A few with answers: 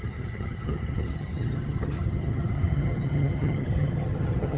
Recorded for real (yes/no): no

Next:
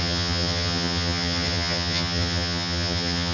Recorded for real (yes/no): no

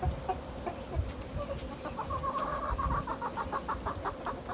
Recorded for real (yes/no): yes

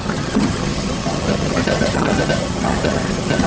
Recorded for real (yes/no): no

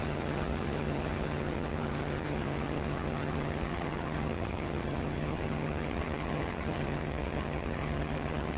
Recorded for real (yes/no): no